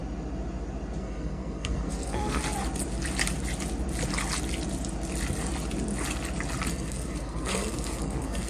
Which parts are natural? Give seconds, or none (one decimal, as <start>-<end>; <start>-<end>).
0.0-1.0; 2.4-6.7